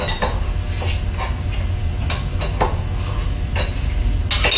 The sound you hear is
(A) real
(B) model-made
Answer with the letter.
A